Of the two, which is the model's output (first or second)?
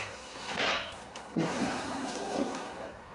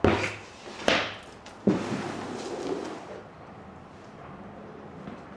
first